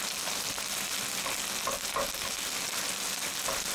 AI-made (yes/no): no